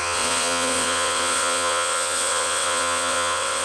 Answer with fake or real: fake